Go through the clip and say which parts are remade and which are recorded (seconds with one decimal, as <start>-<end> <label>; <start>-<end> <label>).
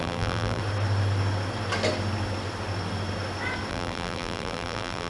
0.0-0.6 remade; 0.6-3.7 recorded; 3.7-5.1 remade